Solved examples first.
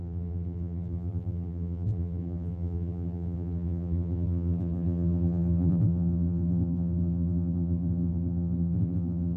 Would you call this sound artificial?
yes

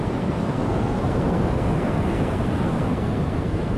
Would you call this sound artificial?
yes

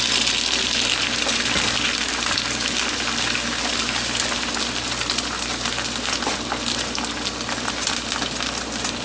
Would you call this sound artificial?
no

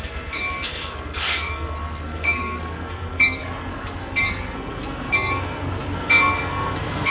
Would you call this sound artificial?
yes